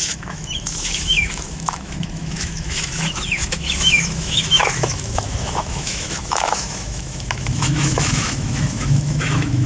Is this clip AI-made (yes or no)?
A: yes